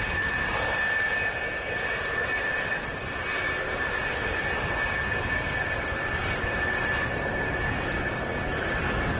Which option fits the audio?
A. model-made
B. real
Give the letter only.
B